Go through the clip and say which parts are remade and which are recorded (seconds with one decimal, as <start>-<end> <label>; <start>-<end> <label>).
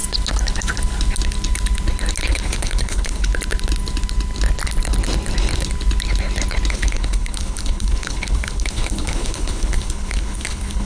0.0-2.3 recorded; 2.3-3.3 remade; 3.3-6.7 recorded; 6.7-10.9 remade